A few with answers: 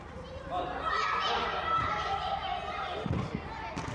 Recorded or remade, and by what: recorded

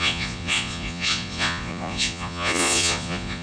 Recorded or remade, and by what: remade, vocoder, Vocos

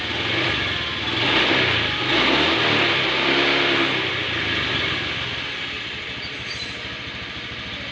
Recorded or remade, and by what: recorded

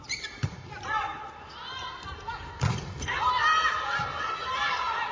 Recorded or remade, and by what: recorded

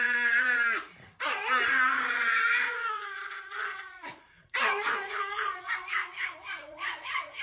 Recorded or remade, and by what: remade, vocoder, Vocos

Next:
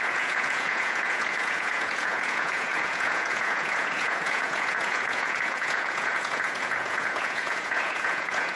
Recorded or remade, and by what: remade, vocoder, Vocos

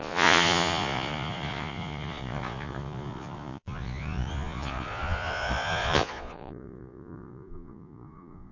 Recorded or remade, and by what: remade, vocoder, Vocos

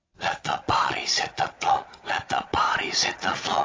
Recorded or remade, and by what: remade, vocoder, Vocos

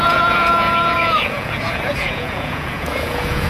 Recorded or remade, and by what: remade, vocoder, Vocos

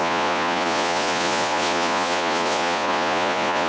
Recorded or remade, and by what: remade, vocoder, Vocos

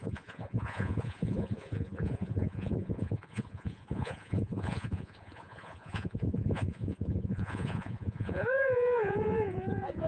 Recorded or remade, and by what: remade, vocoder, Vocos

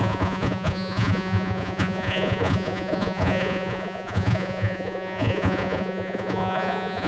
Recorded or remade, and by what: remade, vocoder, Vocos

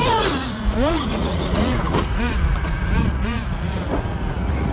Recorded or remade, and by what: remade, vocoder, Vocos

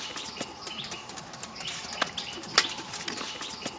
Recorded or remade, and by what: recorded